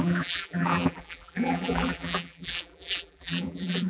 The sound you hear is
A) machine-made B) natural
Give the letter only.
A